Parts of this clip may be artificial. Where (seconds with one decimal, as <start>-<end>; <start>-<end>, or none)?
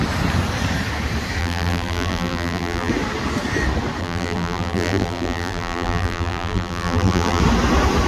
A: 1.4-2.9; 4.0-7.4